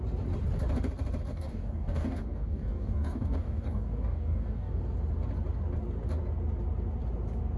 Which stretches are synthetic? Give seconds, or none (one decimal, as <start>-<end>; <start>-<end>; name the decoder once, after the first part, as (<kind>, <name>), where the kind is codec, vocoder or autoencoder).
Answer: 1.3-4.8 (codec, DAC)